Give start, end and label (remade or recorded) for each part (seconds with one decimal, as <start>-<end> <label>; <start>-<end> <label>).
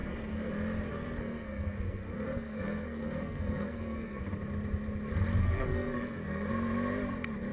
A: 0.0-0.5 remade; 0.5-0.9 recorded; 0.9-4.2 remade; 4.2-5.4 recorded; 5.4-6.5 remade; 6.5-7.5 recorded